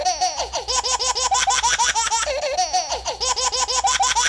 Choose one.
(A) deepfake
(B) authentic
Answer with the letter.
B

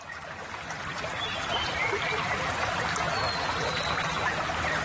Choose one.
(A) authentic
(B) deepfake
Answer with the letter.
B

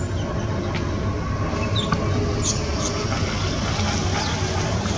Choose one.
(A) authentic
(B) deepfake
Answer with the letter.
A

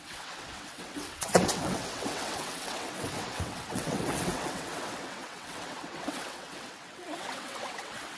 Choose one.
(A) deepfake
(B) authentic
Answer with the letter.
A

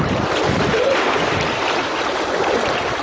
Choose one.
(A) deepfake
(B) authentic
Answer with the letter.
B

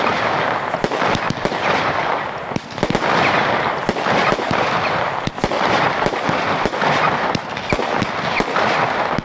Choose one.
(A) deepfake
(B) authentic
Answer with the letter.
B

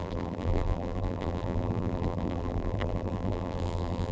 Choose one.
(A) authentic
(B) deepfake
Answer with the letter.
B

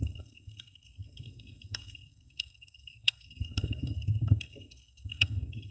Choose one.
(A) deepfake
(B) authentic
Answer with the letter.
A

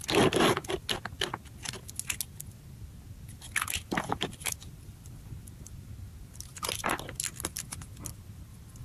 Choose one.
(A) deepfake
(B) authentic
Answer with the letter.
B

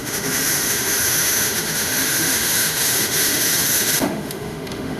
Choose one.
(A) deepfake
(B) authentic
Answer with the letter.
A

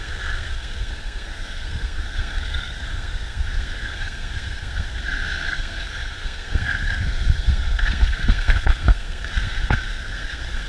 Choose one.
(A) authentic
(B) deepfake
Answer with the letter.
B